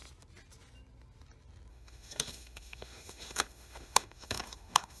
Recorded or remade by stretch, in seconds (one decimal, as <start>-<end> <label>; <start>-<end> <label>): 0.0-1.7 recorded; 1.7-5.0 remade